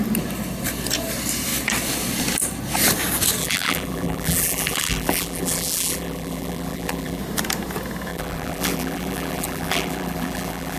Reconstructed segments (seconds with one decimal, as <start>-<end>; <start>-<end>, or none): 3.4-7.2; 8.1-10.8